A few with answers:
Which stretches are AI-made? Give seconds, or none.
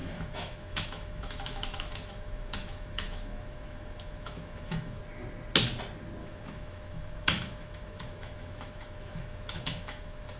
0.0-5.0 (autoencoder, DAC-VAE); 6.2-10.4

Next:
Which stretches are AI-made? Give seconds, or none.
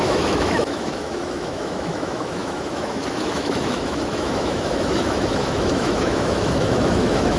0.0-7.4 (autoencoder, DAC-VAE)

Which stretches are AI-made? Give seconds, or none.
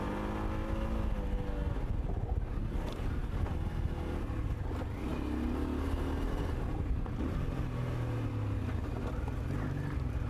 none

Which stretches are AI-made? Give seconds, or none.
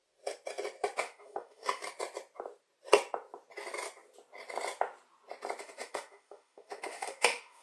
1.0-1.8 (autoencoder, DAC-VAE); 5.6-7.6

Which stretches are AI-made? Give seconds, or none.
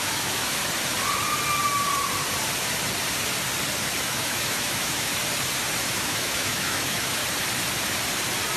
0.0-0.6 (autoencoder, DAC-VAE); 4.0-5.1; 5.8-7.2